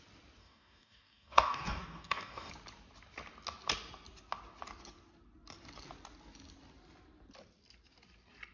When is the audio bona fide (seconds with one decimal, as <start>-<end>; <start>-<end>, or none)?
0.0-0.4; 2.5-8.5